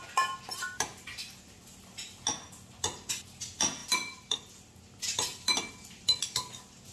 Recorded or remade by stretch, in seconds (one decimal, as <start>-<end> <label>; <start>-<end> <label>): 0.0-3.8 recorded; 3.8-4.7 remade; 4.7-6.9 recorded